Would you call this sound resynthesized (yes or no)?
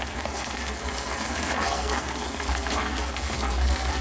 yes